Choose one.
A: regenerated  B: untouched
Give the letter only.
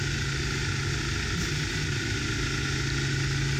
B